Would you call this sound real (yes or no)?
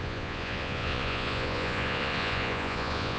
no